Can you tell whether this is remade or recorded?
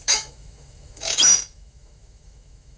remade